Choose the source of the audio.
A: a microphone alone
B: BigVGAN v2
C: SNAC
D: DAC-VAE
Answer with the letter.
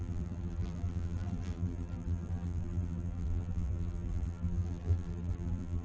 B